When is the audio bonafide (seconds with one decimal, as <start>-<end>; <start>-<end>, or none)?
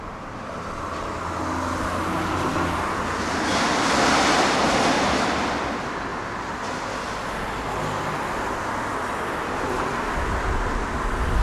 0.0-11.4